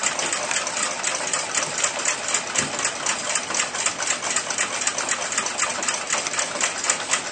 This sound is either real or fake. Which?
real